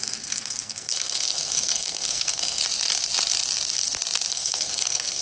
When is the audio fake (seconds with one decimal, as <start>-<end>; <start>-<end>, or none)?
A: 0.0-2.6; 4.3-5.2